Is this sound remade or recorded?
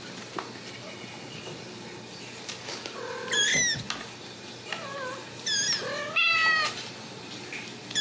recorded